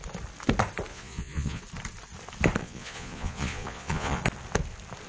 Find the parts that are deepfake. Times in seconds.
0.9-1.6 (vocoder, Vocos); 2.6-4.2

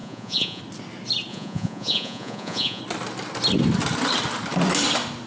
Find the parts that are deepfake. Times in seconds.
0.0-0.6 (vocoder, Vocos); 1.3-2.8

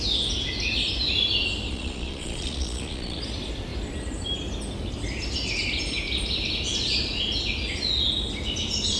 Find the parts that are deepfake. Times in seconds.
1.7-3.2 (vocoder, Vocos)

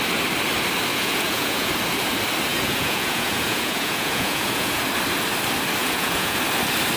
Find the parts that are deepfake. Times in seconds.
0.9-1.7 (vocoder, Vocos); 2.5-4.8; 5.8-6.4

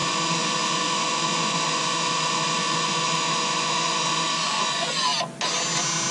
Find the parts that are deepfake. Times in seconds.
0.0-5.1 (vocoder, Vocos)

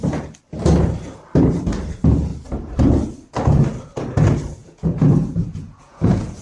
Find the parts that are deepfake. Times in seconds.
4.6-6.4 (vocoder, Vocos)

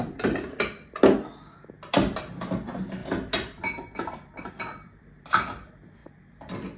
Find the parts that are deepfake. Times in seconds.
none